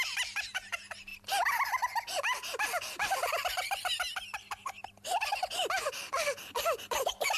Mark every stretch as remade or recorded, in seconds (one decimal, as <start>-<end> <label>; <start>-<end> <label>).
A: 0.0-7.4 recorded